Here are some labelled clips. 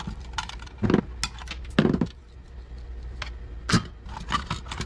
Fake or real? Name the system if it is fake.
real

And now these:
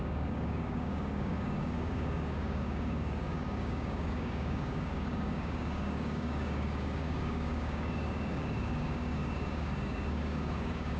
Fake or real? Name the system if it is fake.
fake, codec, DAC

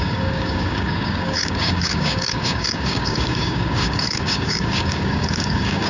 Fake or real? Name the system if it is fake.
fake, codec, DAC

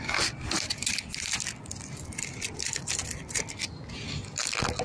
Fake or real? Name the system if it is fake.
real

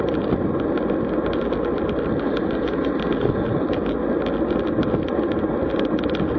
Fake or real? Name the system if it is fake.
real